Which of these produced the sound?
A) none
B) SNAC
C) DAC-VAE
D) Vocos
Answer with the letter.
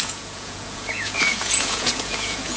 D